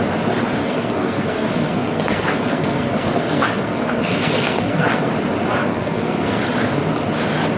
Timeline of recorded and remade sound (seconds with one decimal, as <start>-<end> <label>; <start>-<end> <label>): 0.0-0.6 recorded; 0.6-5.1 remade; 5.1-5.6 recorded; 5.6-6.4 remade; 6.4-7.6 recorded